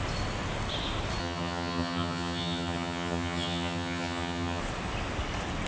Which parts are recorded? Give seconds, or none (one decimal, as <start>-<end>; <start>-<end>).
0.0-1.2; 4.6-5.7